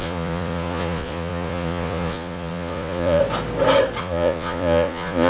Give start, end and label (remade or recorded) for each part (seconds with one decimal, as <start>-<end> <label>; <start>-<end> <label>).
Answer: 0.0-3.2 remade; 3.2-4.0 recorded; 4.0-5.3 remade